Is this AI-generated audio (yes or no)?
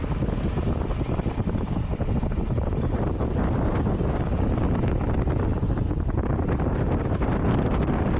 no